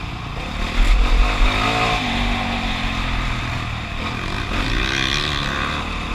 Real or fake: real